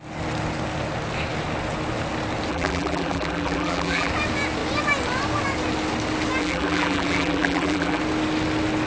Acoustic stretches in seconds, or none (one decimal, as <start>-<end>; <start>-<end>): 0.0-2.5; 4.1-6.4; 8.0-8.9